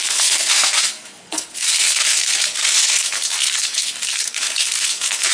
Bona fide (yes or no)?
no